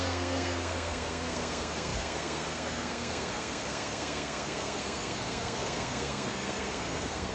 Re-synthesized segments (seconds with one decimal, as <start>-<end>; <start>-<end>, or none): 0.0-7.3